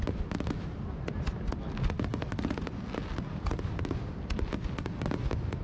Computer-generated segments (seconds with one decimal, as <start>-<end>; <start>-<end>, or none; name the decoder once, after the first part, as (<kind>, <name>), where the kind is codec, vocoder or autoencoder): none